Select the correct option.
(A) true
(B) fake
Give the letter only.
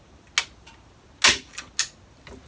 A